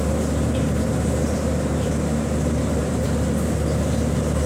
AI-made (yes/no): no